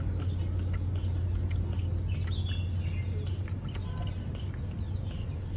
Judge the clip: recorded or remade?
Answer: recorded